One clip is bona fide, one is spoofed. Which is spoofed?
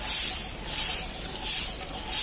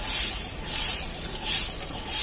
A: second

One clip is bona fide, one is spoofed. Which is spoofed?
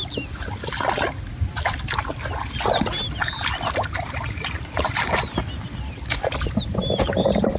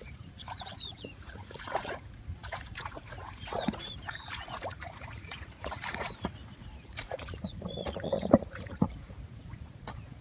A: second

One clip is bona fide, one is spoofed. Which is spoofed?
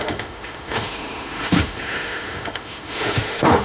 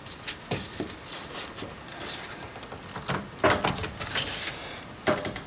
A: first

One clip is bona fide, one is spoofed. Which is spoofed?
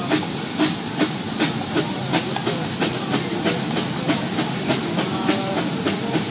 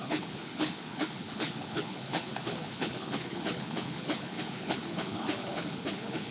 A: second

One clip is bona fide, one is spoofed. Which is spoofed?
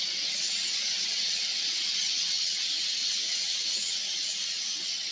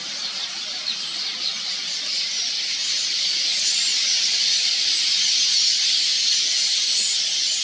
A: first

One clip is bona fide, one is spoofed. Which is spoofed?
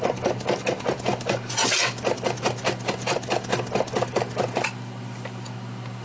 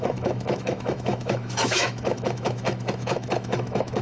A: second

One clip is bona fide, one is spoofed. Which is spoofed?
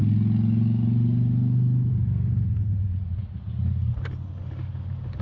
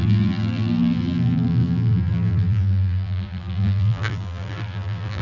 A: second